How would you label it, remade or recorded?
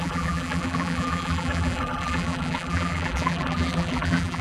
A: remade